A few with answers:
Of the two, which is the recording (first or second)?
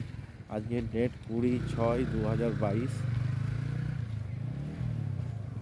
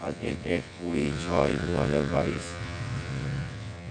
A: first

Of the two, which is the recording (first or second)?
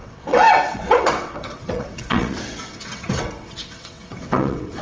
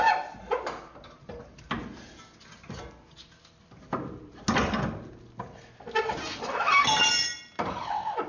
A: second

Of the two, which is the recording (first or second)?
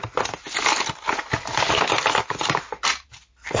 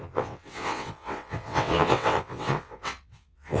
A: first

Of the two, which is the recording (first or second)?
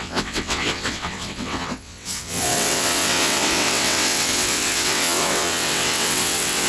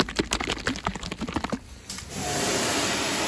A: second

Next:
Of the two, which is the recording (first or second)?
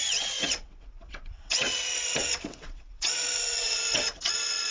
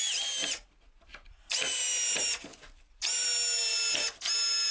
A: second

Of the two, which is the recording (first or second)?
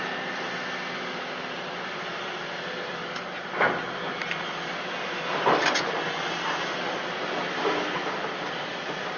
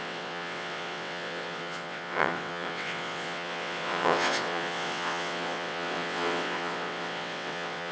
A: first